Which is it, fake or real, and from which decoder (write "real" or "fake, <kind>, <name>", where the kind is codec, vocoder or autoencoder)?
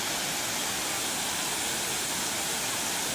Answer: real